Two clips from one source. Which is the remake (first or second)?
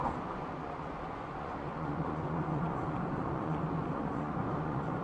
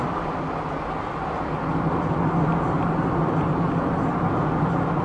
first